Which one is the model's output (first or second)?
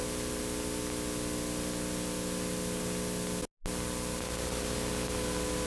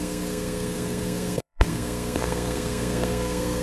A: second